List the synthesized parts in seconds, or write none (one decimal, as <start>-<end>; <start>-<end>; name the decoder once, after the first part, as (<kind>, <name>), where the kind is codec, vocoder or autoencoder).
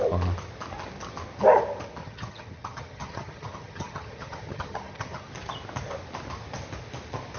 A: 2.0-5.3 (vocoder, HiFi-GAN)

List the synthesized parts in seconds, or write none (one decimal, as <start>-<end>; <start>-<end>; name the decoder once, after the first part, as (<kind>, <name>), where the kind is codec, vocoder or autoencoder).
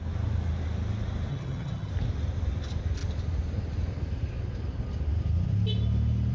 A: 1.3-1.9 (vocoder, HiFi-GAN)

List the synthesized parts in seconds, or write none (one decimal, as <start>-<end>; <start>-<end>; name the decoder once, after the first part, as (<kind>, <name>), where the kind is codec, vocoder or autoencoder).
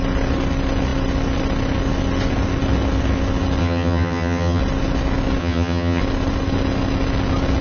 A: 3.6-4.6 (vocoder, HiFi-GAN); 5.4-6.0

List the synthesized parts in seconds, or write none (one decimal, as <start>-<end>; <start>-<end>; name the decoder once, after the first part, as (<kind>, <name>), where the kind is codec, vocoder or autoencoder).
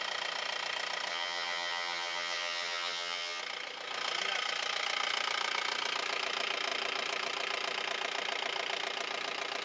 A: 1.1-3.4 (vocoder, HiFi-GAN)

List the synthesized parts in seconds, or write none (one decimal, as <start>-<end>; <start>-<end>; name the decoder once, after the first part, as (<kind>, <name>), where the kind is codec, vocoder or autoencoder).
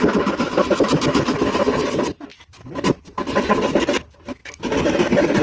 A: none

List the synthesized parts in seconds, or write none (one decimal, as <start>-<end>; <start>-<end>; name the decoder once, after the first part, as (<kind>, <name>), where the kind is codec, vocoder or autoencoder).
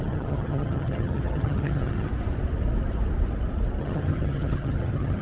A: 0.0-2.1 (vocoder, HiFi-GAN); 3.8-5.2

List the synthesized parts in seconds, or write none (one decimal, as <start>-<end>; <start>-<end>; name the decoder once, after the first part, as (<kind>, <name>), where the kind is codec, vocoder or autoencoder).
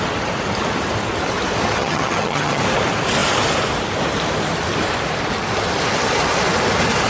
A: 1.8-2.6 (vocoder, HiFi-GAN)